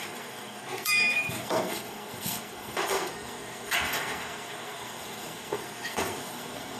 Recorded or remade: remade